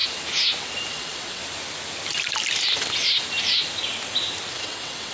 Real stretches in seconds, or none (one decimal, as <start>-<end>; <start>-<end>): 0.0-0.9; 1.4-4.5